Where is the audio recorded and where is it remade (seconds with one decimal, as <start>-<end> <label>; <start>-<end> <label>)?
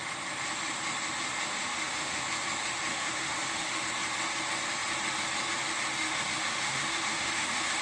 0.0-1.5 recorded; 1.5-2.2 remade; 2.2-2.9 recorded; 2.9-3.8 remade; 3.8-6.0 recorded; 6.0-7.8 remade